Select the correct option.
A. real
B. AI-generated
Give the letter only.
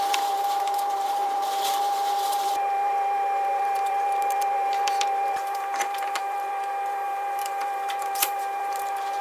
B